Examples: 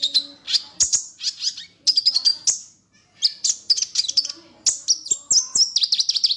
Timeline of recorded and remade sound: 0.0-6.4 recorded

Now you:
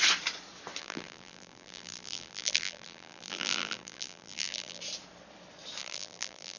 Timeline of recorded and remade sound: 0.0-0.8 recorded; 0.8-4.8 remade; 4.8-5.8 recorded; 5.8-6.6 remade

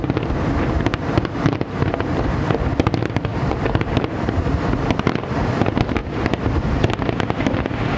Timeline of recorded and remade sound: 0.0-8.0 remade

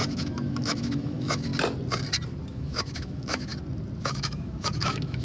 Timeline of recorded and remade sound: 0.0-1.5 remade; 1.5-2.5 recorded; 2.5-3.5 remade; 3.5-4.0 recorded; 4.0-5.2 remade

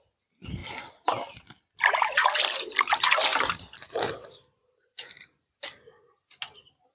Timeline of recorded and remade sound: 0.0-3.3 recorded; 3.3-5.9 remade; 5.9-6.9 recorded

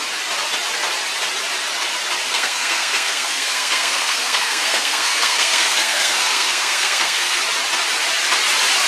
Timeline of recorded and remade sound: 0.0-2.3 recorded; 2.3-7.4 remade; 7.4-8.9 recorded

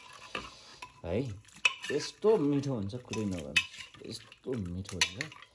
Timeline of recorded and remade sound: 0.0-5.5 recorded

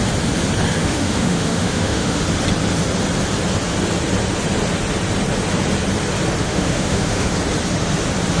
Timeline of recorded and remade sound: 0.0-0.8 recorded; 0.8-2.2 remade; 2.2-6.4 recorded; 6.4-7.3 remade; 7.3-8.4 recorded